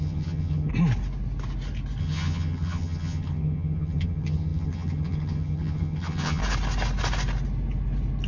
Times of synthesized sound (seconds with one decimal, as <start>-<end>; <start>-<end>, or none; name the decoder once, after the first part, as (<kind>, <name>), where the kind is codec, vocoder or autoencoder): 0.0-0.7 (vocoder, HiFi-GAN); 2.0-6.4